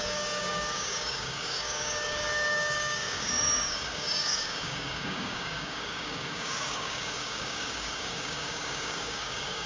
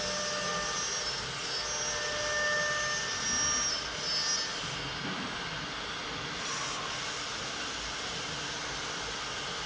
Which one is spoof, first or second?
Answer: first